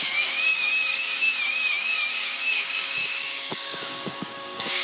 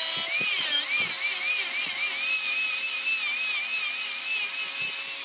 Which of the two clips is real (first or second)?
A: second